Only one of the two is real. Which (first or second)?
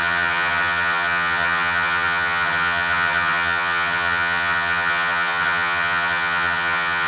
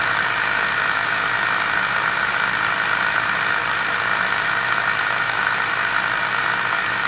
second